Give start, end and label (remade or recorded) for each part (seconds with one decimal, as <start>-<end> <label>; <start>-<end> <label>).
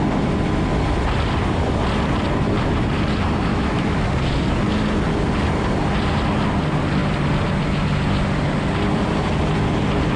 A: 0.0-3.5 recorded; 3.5-4.1 remade; 4.1-10.2 recorded